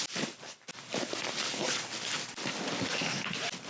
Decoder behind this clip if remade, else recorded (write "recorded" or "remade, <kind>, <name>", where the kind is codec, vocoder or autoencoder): recorded